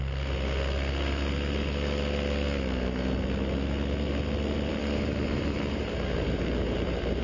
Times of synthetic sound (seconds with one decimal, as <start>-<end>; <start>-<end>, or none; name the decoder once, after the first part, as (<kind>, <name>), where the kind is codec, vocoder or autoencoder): 4.7-7.2 (vocoder, BigVGAN v2)